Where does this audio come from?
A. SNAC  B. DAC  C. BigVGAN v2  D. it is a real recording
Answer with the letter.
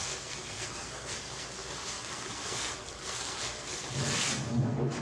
A